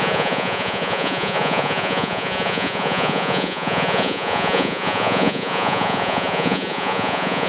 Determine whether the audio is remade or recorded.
remade